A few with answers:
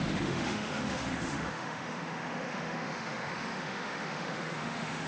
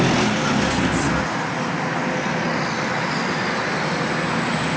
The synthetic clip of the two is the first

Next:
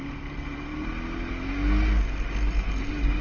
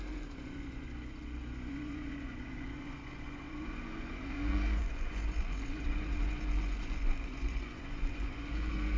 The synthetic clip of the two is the second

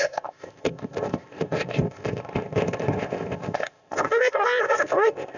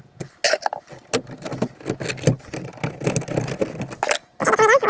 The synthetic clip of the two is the first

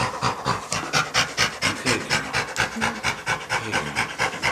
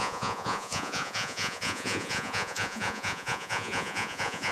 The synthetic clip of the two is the second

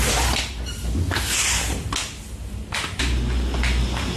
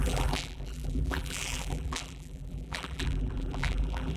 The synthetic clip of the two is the second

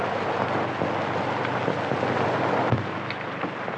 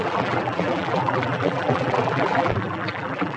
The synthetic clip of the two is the second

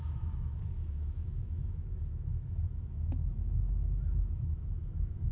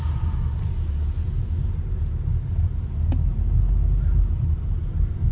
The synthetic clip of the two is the first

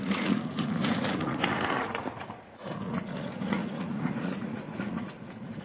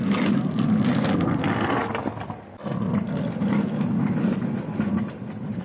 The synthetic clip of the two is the first